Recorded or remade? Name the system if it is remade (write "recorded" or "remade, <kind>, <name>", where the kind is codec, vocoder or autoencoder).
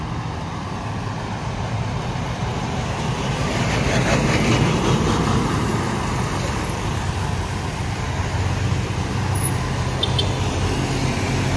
recorded